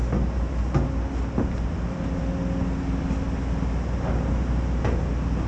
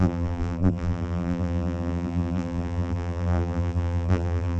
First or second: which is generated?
second